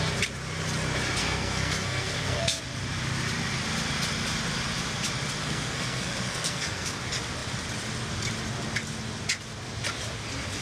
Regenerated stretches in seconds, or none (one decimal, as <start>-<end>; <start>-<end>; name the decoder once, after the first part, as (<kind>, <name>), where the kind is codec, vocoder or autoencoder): 1.2-2.6 (codec, SNAC); 5.4-7.0